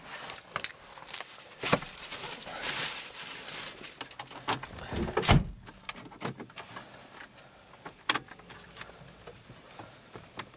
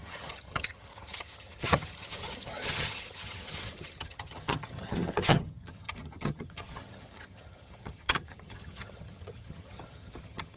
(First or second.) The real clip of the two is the first